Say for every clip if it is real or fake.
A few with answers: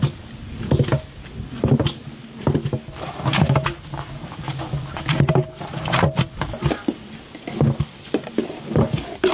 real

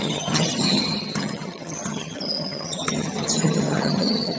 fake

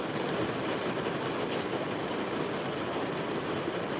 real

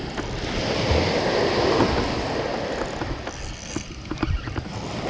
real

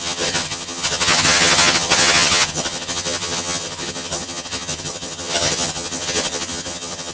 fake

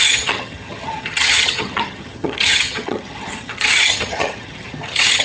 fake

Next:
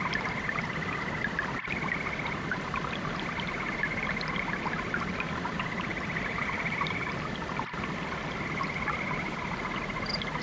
real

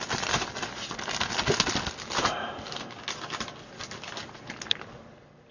real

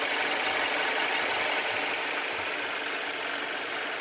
real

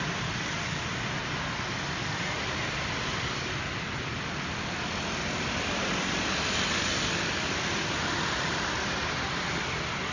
real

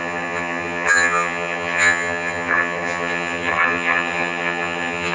fake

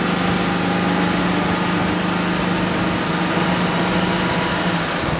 real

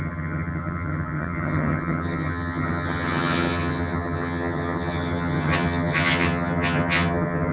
fake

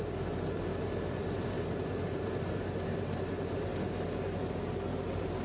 real